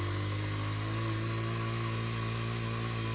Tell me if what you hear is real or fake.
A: real